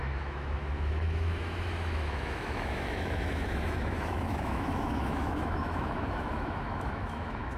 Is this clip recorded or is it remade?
remade